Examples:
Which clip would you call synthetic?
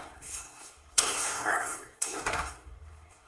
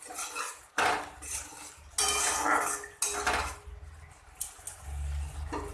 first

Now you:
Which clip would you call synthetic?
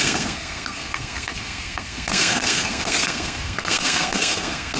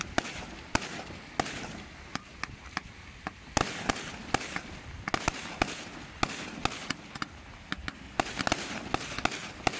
first